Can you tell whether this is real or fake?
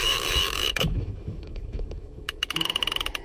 fake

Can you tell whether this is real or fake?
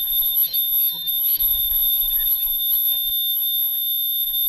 fake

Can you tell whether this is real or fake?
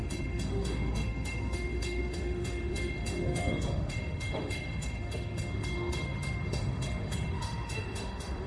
fake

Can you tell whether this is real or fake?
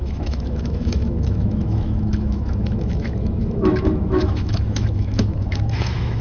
fake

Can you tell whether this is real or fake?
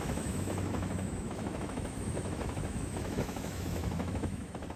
fake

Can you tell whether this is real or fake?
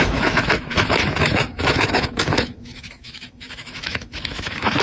fake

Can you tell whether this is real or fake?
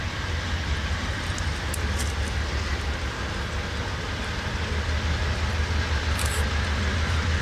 real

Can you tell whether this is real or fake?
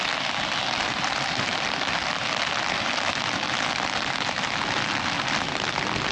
real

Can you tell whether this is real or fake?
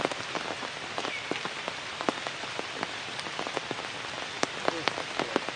real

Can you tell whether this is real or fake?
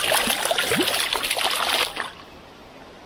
real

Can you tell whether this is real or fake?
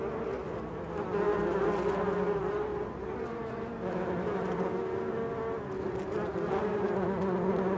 real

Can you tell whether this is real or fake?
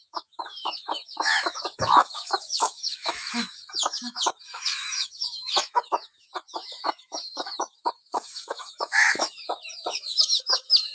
fake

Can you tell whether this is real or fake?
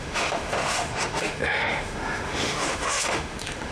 fake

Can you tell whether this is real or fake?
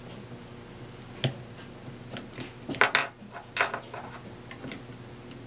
real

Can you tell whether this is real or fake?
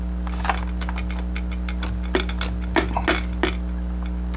real